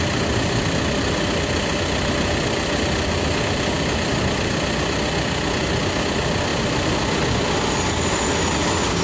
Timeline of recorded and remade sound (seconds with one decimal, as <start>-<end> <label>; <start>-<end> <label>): 0.0-9.0 recorded